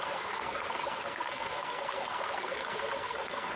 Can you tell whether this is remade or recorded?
remade